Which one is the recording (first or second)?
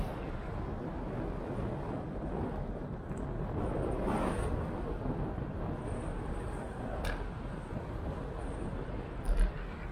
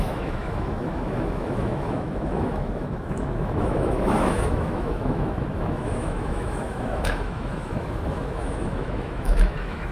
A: first